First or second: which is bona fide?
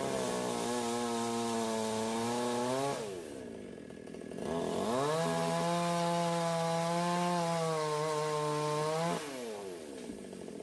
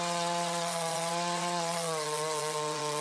first